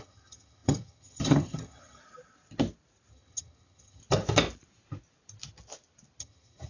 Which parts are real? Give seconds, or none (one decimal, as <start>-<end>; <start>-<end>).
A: 2.0-3.1; 4.0-6.2